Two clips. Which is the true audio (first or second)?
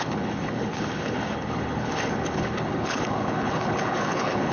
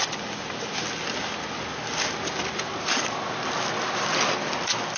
second